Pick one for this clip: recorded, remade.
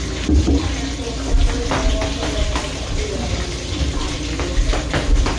recorded